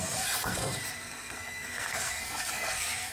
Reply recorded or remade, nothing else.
remade